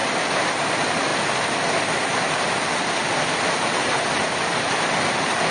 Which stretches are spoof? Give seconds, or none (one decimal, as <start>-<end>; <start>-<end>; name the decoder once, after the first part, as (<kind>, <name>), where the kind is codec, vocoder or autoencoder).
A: 0.0-0.7 (vocoder, BigVGAN v2)